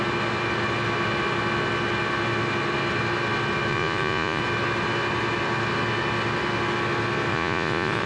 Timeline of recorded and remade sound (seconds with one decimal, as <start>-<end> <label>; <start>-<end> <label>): 0.0-3.7 recorded; 3.7-4.4 remade; 4.4-7.3 recorded; 7.3-8.1 remade